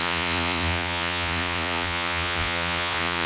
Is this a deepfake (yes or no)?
yes